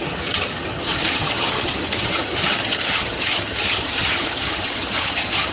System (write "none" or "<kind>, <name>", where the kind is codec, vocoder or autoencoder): vocoder, HiFi-GAN